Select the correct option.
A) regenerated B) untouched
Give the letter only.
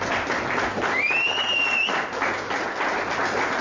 B